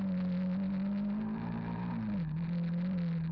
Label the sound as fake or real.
real